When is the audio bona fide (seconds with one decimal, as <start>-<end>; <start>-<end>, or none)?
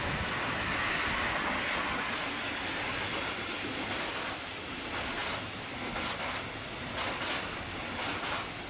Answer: 0.0-8.7